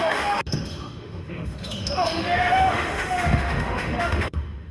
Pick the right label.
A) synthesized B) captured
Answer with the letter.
A